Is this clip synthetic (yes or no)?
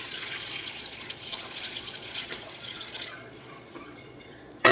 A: yes